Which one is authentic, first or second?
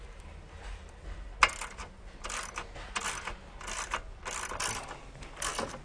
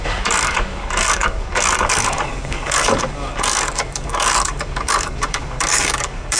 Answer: first